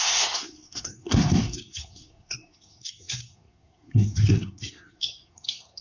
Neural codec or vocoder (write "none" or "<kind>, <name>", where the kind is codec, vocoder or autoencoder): codec, SNAC